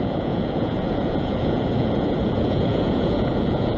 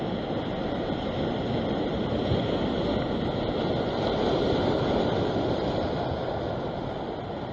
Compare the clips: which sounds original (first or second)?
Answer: second